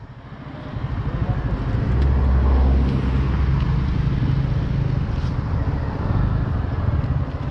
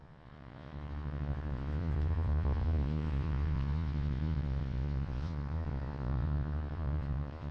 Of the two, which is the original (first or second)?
first